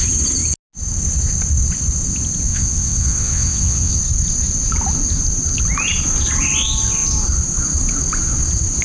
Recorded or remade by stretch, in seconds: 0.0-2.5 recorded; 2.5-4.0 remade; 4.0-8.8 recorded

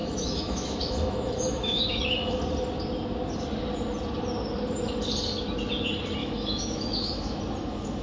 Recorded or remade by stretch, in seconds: 0.0-2.4 remade; 2.4-6.2 recorded; 6.2-7.4 remade; 7.4-8.0 recorded